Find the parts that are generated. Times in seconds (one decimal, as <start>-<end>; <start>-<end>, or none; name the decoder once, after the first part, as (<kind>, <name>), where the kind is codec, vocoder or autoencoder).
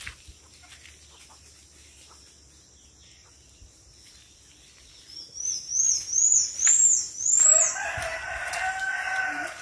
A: none